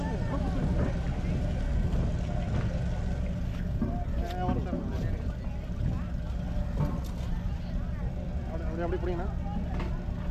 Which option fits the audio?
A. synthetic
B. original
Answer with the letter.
B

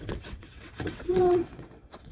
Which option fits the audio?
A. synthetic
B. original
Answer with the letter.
A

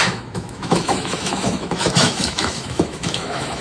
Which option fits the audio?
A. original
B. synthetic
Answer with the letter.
B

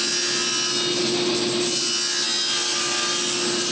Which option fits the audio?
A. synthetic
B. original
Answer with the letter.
B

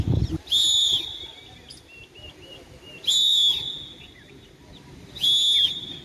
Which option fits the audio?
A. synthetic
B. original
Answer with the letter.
B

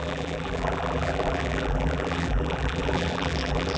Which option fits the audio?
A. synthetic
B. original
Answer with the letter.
A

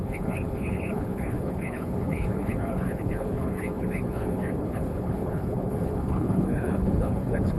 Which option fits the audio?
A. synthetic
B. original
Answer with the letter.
A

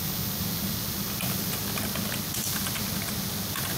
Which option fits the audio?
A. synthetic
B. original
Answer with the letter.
B